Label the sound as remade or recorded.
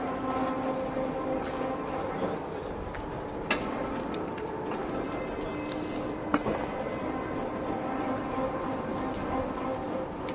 recorded